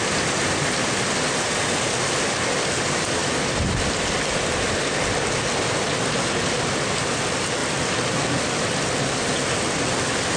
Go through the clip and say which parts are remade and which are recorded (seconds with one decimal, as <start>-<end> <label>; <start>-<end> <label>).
0.0-10.4 recorded